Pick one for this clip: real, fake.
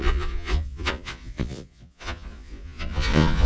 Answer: fake